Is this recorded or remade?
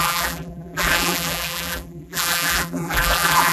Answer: remade